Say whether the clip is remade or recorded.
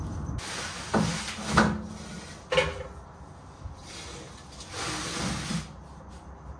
recorded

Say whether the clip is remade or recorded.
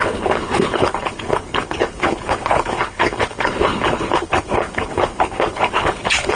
remade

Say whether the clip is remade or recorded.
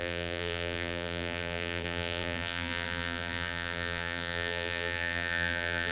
remade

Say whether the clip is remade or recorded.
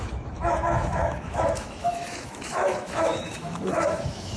remade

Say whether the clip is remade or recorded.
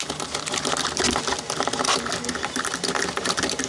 recorded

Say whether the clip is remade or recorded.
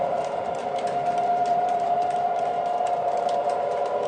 remade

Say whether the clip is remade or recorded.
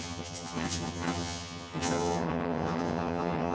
remade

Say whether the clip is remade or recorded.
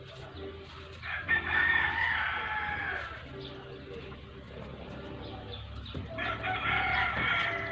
recorded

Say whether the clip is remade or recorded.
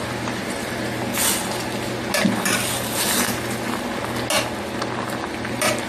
recorded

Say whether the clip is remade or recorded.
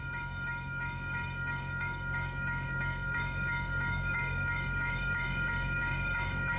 remade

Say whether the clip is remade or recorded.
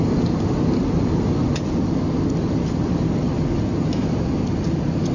recorded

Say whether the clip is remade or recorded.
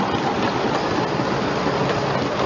recorded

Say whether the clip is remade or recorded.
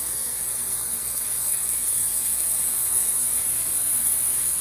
remade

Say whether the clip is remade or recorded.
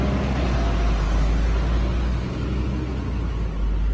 recorded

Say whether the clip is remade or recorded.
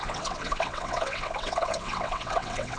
remade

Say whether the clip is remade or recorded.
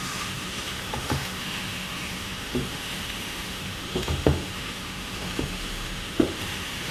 remade